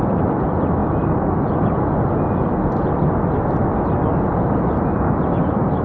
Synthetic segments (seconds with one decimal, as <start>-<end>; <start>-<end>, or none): none